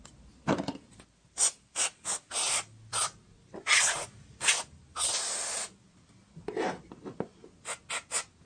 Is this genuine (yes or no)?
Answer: yes